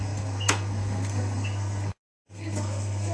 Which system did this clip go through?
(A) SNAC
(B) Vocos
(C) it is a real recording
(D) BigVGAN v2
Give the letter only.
A